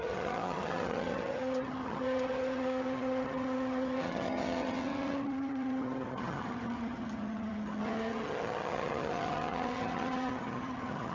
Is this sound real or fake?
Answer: fake